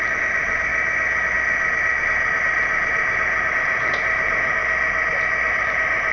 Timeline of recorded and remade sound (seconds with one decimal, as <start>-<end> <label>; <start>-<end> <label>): 0.0-0.7 remade; 0.7-2.0 recorded; 2.0-4.6 remade; 4.6-5.5 recorded; 5.5-6.1 remade